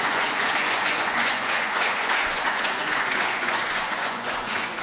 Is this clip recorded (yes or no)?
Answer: no